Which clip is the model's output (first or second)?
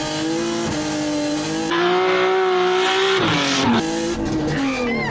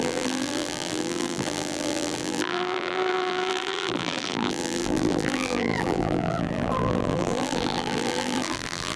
second